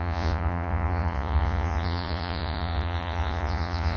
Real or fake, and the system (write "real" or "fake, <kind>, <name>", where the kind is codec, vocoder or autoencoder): fake, vocoder, Vocos